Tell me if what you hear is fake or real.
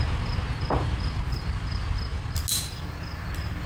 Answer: real